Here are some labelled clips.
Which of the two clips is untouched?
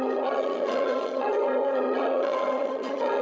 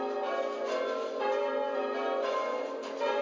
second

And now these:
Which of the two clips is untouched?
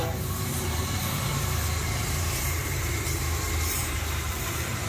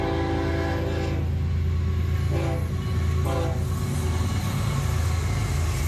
second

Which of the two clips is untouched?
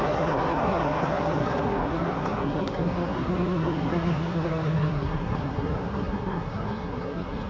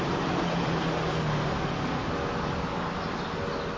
second